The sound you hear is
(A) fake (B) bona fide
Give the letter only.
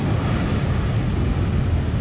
B